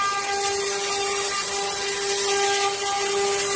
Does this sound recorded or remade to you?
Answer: recorded